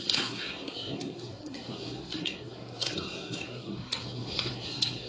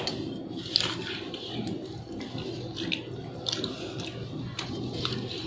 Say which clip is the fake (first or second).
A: first